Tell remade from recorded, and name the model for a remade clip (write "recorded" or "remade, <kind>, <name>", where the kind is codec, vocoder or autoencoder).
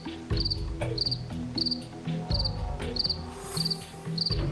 recorded